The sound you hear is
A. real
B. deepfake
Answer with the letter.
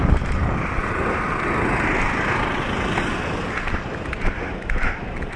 A